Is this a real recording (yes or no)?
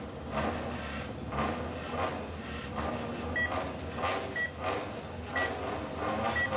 yes